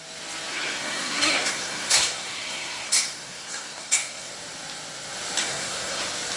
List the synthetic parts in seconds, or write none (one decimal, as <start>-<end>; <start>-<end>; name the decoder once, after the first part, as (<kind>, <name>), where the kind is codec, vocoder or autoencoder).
0.5-4.3 (codec, SNAC); 5.4-6.0